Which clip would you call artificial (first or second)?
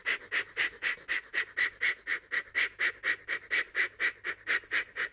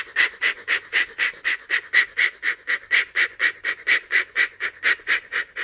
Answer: second